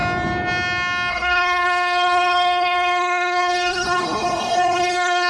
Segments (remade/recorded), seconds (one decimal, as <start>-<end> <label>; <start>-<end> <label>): 0.0-1.1 recorded; 1.1-5.3 remade